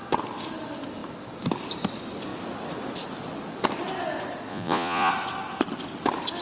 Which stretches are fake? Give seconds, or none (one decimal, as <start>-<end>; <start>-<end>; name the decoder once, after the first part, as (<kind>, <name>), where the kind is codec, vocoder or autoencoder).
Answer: 4.5-5.1 (vocoder, Vocos)